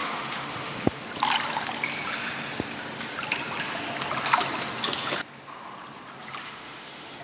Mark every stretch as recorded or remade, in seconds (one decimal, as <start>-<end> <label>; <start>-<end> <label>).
0.0-1.0 remade; 1.0-6.4 recorded; 6.4-7.2 remade